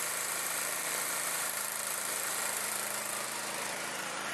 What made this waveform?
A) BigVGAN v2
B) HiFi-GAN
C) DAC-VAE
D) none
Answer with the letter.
A